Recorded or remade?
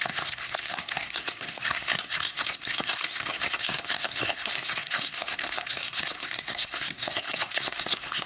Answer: remade